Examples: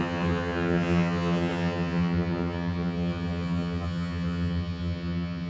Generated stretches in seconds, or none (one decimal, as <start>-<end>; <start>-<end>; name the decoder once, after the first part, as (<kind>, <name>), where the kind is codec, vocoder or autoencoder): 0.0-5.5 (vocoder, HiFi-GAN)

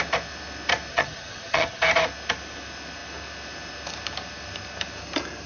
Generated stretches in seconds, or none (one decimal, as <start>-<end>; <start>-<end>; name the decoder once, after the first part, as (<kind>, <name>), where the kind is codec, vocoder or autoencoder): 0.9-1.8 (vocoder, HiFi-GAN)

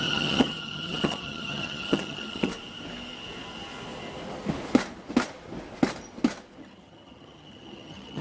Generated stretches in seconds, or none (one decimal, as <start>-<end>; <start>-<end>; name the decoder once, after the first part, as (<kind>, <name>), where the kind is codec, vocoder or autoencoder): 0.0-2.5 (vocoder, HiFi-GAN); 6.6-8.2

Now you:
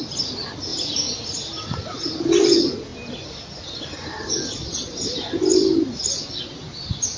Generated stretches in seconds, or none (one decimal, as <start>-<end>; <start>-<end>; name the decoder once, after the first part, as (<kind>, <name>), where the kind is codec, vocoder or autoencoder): none

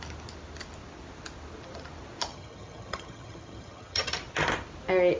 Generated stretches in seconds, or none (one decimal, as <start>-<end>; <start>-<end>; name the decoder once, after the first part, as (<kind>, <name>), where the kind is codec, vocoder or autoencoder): 2.3-4.1 (vocoder, HiFi-GAN)

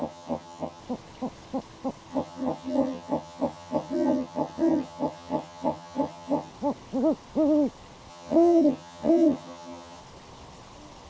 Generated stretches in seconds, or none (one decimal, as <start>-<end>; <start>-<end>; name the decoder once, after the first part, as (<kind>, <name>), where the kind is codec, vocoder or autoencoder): 0.0-0.8 (vocoder, HiFi-GAN); 2.1-6.5; 8.1-10.0